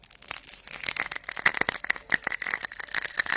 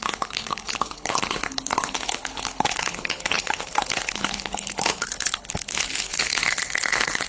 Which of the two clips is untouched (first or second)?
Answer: first